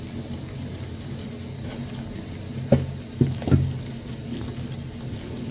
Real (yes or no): yes